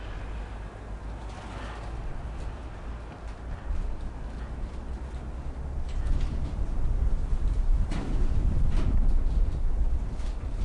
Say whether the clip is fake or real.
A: real